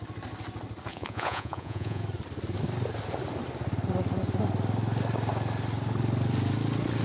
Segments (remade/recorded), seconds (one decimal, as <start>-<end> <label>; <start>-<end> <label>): 0.0-0.9 recorded; 0.9-2.0 remade; 2.0-7.0 recorded